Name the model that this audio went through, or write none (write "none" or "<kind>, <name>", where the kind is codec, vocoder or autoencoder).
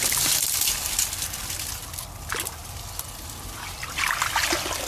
none